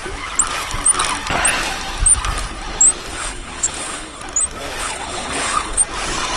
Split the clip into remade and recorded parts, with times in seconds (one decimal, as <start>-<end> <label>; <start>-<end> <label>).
0.0-3.1 recorded; 3.1-4.2 remade; 4.2-4.8 recorded; 4.8-5.8 remade; 5.8-6.4 recorded